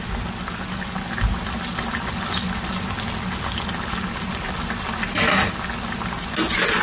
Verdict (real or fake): real